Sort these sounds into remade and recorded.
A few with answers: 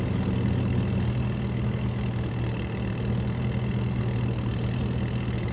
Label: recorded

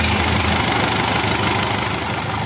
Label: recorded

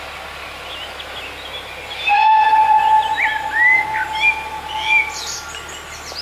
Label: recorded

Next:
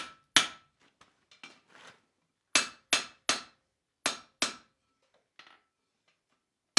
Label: recorded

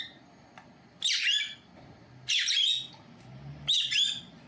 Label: recorded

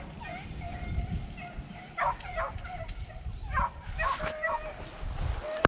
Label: recorded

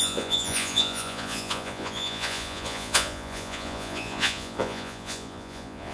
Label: remade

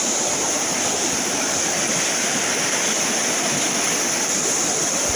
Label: recorded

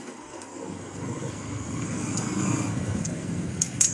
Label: remade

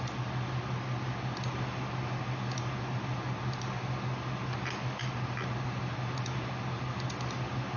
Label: recorded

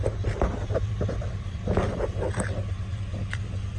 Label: remade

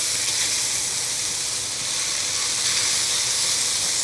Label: recorded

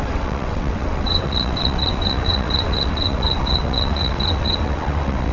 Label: remade